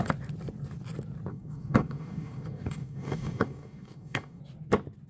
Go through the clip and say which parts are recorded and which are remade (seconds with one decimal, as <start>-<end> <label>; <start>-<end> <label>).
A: 0.0-1.3 recorded; 1.3-4.4 remade; 4.4-5.1 recorded